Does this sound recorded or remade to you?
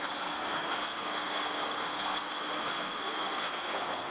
remade